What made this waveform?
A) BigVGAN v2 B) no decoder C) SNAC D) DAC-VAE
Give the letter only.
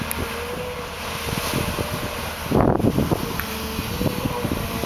B